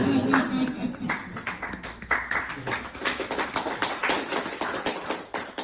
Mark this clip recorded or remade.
recorded